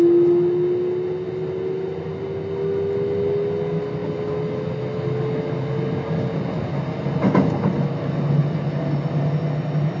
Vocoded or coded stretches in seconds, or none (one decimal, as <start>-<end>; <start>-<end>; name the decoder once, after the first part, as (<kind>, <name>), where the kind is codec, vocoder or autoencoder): none